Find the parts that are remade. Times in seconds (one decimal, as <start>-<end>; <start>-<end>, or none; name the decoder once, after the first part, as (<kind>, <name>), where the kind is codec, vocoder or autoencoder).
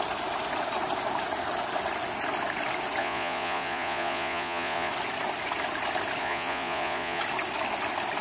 3.0-4.9 (vocoder, Vocos); 6.2-7.2